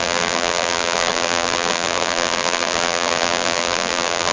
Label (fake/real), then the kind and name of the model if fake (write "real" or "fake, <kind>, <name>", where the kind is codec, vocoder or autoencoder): fake, vocoder, BigVGAN v2